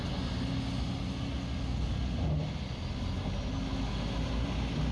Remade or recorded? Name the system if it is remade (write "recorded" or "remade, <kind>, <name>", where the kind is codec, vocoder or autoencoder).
recorded